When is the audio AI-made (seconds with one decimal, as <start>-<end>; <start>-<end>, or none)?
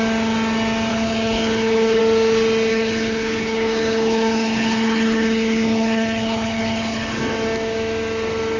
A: 0.9-2.0; 2.7-7.2